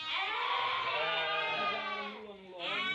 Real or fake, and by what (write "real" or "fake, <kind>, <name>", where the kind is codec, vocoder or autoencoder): real